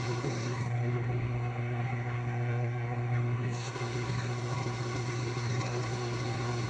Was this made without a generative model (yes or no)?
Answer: no